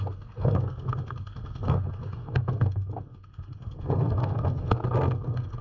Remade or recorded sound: remade